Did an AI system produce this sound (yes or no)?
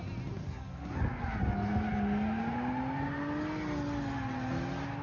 no